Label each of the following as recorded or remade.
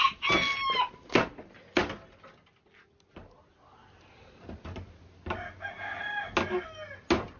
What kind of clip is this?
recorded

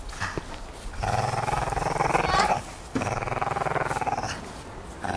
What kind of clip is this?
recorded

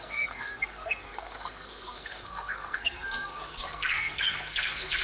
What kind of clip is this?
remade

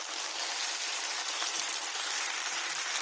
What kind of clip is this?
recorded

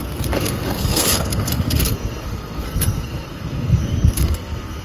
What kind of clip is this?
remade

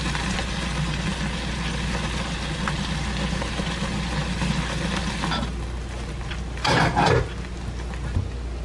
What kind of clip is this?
recorded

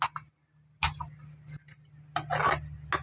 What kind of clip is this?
recorded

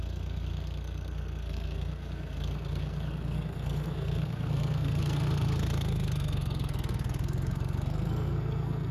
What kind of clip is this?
remade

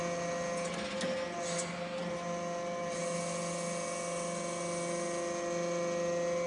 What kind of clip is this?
recorded